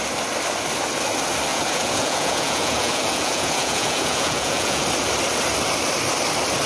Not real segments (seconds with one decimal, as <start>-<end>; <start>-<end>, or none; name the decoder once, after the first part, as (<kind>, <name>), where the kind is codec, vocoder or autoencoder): 1.5-4.8 (vocoder, Vocos)